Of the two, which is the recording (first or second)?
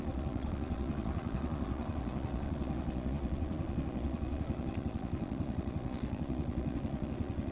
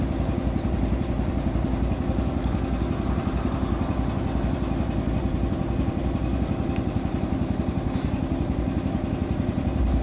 second